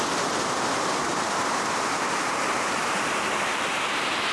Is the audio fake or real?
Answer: real